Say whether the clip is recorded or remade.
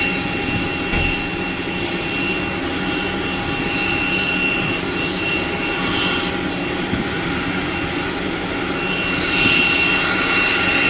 recorded